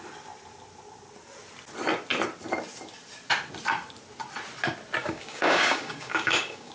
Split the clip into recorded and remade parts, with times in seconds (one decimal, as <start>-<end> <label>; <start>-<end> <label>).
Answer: 0.0-5.0 recorded; 5.0-6.7 remade